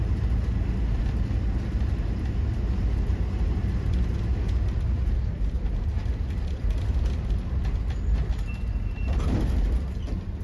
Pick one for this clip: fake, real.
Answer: real